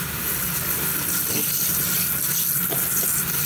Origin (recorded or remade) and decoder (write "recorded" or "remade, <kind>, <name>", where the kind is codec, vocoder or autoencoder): recorded